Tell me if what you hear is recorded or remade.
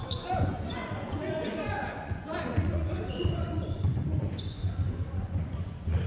remade